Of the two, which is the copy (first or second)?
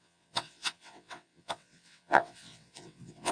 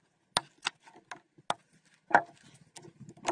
first